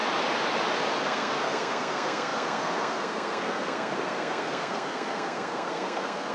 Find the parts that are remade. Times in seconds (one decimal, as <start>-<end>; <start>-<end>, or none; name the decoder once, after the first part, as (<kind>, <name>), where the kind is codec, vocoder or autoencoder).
1.0-6.3 (codec, SNAC)